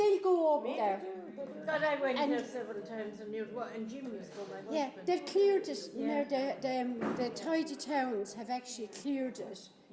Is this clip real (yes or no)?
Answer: yes